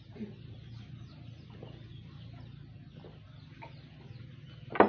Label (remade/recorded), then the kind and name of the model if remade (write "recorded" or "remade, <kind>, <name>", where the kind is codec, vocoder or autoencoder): recorded